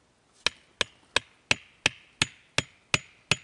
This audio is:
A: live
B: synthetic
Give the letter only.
A